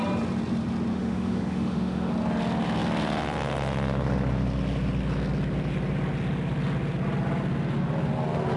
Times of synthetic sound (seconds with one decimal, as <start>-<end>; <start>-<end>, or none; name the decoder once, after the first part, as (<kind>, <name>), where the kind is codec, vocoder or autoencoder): 0.9-2.1 (autoencoder, DAC-VAE)